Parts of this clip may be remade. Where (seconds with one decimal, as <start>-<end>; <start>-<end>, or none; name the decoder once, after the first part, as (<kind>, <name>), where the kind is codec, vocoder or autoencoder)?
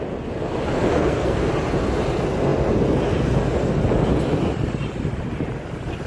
0.9-1.5 (codec, SNAC)